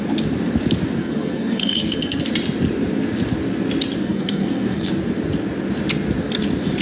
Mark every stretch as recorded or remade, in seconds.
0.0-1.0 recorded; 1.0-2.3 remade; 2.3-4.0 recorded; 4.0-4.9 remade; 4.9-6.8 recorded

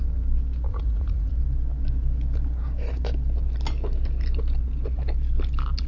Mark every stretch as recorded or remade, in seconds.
0.0-0.7 recorded; 0.7-1.3 remade; 1.3-5.9 recorded

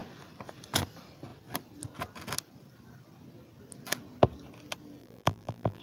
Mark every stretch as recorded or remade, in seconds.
0.0-5.0 recorded; 5.0-5.8 remade

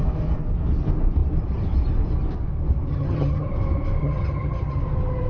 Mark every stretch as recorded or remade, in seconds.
0.0-2.9 recorded; 2.9-3.5 remade; 3.5-4.0 recorded; 4.0-4.8 remade; 4.8-5.3 recorded

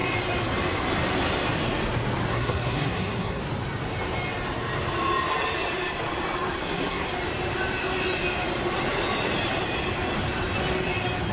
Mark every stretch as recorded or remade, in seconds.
0.0-2.3 recorded; 2.3-3.4 remade; 3.4-6.6 recorded; 6.6-7.1 remade; 7.1-11.3 recorded

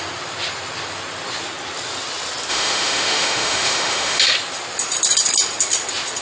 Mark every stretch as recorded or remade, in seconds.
0.0-2.5 recorded; 2.5-4.2 remade; 4.2-6.2 recorded

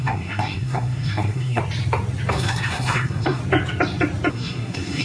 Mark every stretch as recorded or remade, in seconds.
0.0-1.6 remade; 1.6-2.3 recorded; 2.3-3.4 remade; 3.4-4.3 recorded; 4.3-5.0 remade